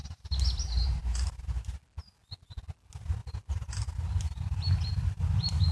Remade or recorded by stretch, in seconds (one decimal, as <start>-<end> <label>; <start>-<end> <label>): 0.0-1.3 remade; 1.3-5.7 recorded